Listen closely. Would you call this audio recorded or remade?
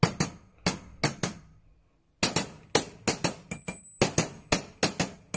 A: recorded